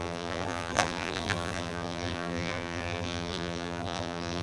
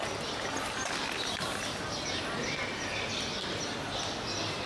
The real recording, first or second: second